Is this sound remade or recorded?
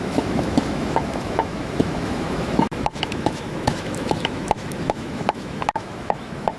remade